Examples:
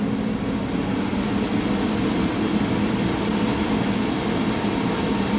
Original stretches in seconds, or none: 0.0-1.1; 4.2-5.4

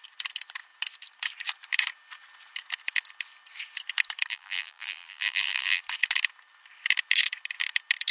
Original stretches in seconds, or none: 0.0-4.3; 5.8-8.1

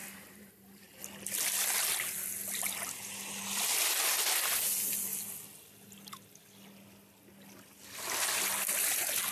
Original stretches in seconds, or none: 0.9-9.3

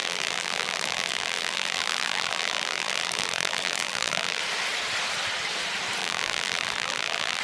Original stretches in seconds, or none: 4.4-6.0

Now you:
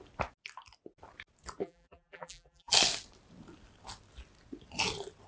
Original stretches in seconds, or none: 0.0-1.6; 2.7-5.3

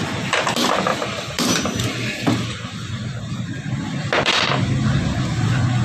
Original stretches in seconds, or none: 0.0-0.9; 4.4-5.8